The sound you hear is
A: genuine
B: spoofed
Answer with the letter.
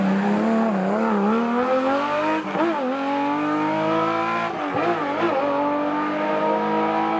A